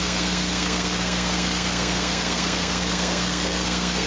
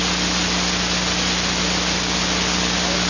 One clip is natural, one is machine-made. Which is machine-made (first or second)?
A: first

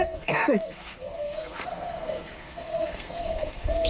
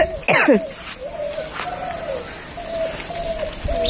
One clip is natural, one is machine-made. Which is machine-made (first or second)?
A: first